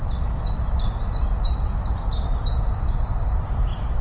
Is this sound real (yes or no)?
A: yes